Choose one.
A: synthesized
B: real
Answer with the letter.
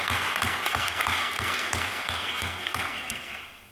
A